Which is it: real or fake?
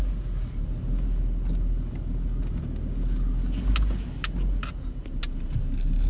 real